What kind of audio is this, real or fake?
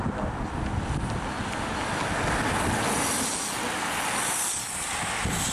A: real